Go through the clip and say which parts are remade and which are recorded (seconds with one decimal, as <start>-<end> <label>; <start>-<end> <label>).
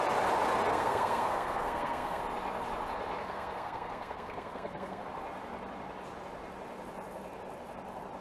0.0-0.7 recorded; 0.7-2.2 remade; 2.2-3.2 recorded; 3.2-5.0 remade; 5.0-8.2 recorded